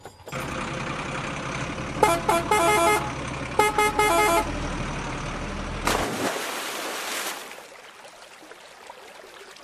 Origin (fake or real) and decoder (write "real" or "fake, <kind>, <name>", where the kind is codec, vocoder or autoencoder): real